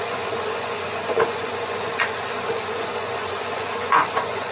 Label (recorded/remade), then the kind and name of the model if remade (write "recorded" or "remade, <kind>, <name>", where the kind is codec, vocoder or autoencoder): remade, vocoder, Vocos